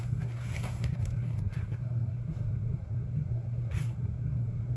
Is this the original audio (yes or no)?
no